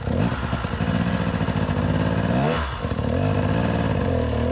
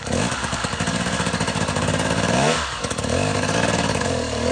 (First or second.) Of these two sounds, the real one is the first